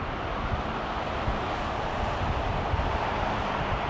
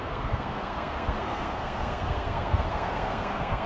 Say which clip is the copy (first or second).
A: second